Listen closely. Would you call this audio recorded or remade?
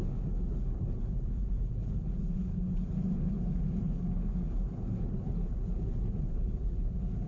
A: remade